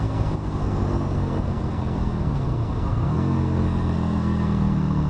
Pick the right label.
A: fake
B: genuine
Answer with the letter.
A